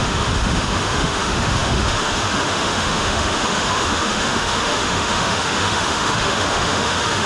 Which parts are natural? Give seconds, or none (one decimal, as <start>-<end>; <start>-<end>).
none